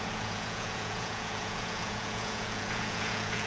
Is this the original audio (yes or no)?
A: no